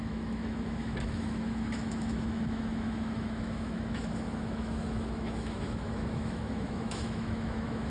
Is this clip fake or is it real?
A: fake